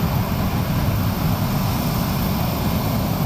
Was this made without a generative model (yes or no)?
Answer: yes